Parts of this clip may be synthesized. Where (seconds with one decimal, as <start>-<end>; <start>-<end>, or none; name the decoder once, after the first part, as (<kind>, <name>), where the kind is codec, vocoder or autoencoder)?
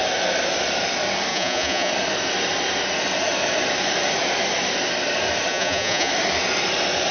1.3-1.9 (vocoder, Vocos); 5.5-6.1